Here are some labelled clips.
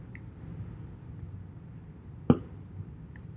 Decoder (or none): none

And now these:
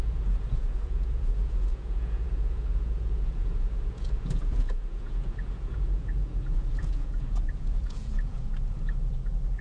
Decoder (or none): vocoder, Vocos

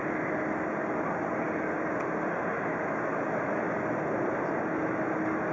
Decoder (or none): none